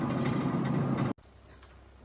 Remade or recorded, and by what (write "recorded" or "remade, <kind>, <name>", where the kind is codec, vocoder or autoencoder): recorded